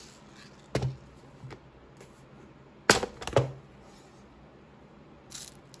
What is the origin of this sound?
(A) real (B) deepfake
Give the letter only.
A